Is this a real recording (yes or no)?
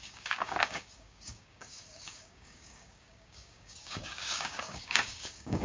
no